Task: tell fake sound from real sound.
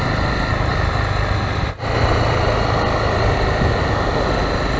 real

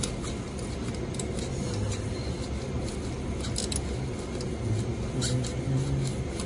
real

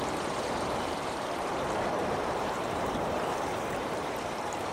fake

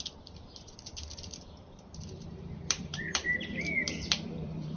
fake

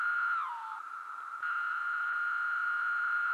real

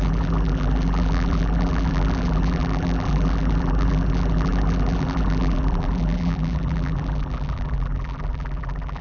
fake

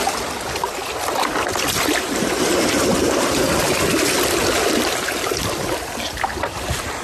real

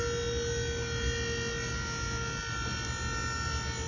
real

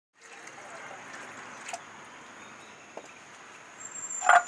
real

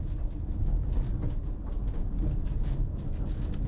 real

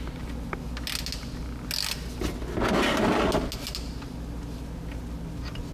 real